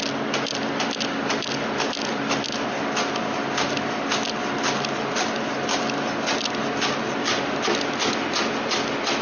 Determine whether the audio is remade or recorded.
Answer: recorded